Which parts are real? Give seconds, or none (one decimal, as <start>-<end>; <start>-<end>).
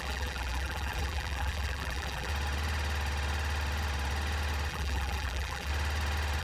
2.3-4.7; 5.7-6.4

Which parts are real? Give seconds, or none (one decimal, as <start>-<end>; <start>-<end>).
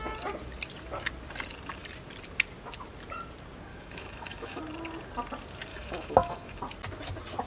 0.0-3.7; 4.6-5.7; 6.6-7.5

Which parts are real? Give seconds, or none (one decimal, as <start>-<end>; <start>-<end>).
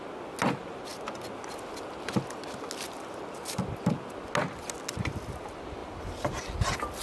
0.0-5.8; 6.4-7.0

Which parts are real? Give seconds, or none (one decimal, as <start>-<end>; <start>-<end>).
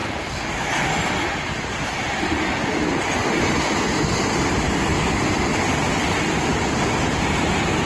0.0-7.9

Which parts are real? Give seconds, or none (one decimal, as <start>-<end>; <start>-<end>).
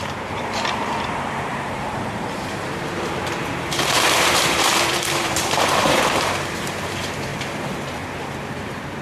7.3-8.5